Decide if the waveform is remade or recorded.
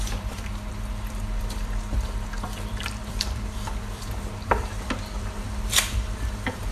remade